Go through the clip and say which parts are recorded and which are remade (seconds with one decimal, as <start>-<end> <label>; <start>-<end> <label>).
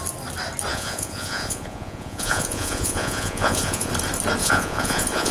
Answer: 0.0-0.7 recorded; 0.7-3.9 remade; 3.9-4.4 recorded; 4.4-5.3 remade